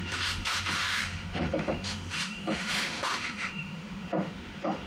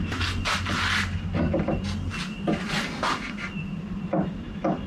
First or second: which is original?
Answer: second